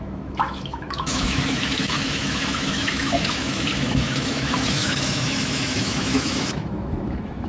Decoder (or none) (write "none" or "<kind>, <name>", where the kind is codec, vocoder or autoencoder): autoencoder, DAC-VAE